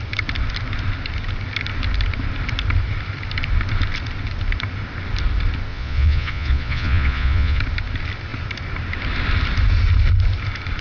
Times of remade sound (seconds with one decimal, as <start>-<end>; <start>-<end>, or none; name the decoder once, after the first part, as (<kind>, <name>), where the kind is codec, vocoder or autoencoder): 5.7-7.6 (vocoder, Vocos)